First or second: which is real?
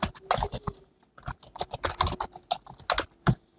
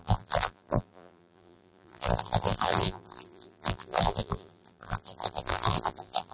first